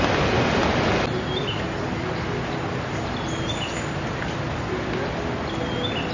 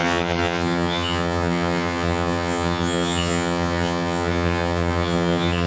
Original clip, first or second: first